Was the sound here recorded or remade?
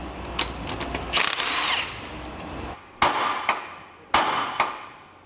recorded